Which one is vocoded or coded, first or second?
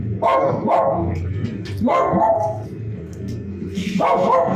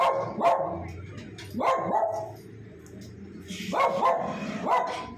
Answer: first